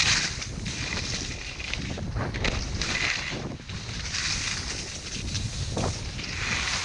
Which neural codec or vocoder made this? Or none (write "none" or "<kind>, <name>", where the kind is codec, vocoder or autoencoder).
none